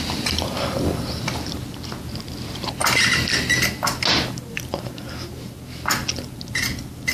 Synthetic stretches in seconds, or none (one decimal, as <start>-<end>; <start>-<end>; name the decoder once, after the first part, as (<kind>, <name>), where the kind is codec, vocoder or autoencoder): none